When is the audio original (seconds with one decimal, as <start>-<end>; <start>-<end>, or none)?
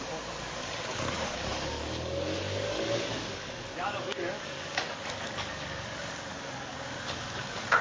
none